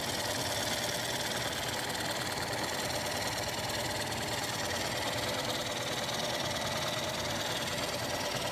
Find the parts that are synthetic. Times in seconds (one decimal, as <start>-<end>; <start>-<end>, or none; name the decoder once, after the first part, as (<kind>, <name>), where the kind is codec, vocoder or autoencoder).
none